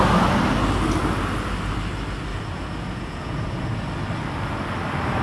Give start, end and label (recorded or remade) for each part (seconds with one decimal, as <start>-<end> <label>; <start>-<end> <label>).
0.0-2.3 recorded; 2.3-3.8 remade; 3.8-5.2 recorded